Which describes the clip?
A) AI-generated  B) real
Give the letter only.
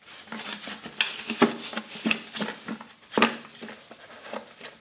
B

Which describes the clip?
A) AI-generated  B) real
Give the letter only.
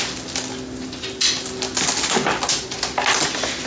B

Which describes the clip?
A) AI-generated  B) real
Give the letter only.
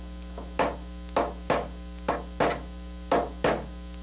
B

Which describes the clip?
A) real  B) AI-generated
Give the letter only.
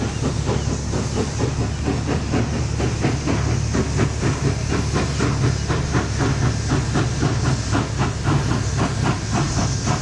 A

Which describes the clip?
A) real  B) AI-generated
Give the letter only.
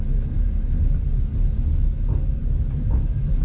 A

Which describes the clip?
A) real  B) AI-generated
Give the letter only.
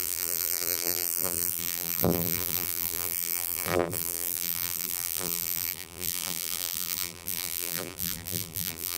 B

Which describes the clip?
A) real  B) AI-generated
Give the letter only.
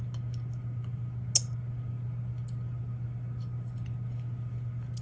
A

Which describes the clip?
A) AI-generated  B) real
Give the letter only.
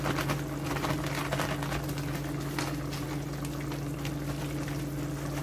B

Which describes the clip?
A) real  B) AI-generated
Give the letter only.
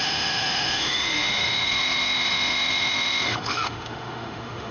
B